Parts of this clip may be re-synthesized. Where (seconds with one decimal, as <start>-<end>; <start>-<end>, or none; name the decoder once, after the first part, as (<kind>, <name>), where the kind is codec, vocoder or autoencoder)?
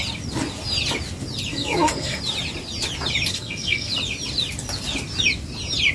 1.5-2.2 (codec, SNAC); 3.3-3.9